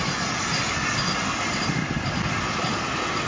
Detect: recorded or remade recorded